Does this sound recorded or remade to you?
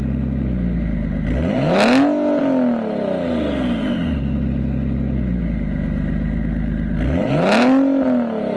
recorded